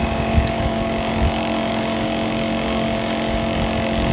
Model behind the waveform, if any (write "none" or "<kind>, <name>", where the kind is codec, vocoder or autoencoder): codec, DAC